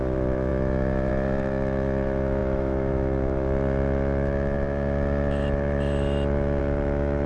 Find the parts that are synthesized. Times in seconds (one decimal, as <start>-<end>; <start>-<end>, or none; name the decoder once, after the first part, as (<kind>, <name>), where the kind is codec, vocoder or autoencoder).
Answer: 0.0-7.3 (autoencoder, DAC-VAE)